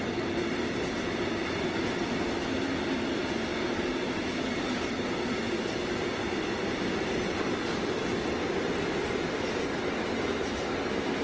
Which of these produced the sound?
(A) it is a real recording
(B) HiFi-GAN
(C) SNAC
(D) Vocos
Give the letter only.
A